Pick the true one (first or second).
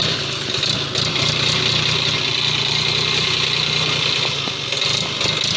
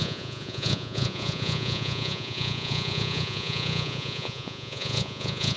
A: first